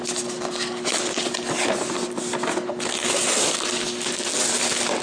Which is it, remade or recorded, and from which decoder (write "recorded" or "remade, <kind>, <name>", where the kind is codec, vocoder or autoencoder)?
recorded